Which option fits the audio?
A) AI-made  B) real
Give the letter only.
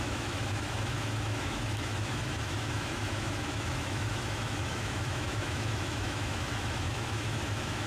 A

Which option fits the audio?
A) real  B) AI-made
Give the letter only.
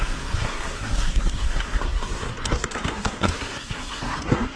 B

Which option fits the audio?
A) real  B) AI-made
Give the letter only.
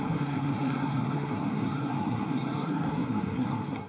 B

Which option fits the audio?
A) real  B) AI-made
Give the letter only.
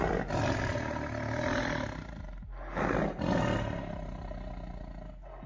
A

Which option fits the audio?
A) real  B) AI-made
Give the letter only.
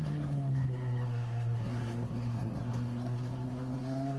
B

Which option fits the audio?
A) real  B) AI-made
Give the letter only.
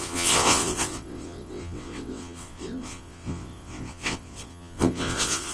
B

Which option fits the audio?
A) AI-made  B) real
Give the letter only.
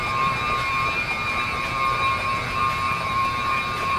A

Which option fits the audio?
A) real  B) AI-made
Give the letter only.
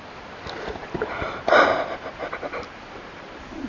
B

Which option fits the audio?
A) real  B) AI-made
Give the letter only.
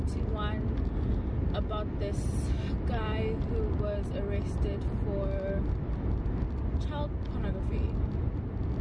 A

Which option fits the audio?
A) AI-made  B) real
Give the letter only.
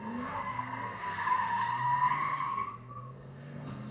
A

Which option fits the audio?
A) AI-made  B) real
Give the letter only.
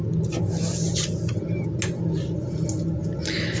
B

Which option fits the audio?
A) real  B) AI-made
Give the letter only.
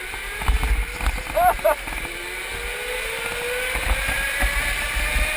A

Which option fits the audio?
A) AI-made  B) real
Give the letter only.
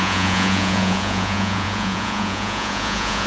A